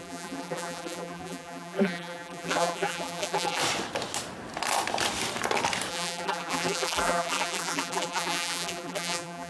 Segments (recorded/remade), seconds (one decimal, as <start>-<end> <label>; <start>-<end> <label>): 0.0-3.6 remade; 3.6-5.9 recorded; 5.9-9.5 remade